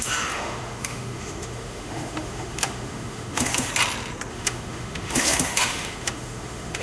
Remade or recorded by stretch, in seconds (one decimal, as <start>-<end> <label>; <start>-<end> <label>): 0.0-3.7 remade; 3.7-4.3 recorded; 4.3-6.8 remade